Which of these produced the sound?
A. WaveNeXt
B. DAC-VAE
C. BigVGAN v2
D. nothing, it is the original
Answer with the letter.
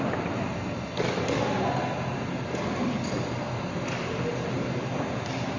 D